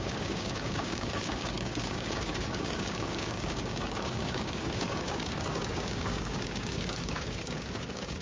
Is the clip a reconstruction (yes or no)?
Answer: yes